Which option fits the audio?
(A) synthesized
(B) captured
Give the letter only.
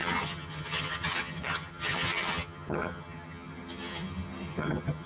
A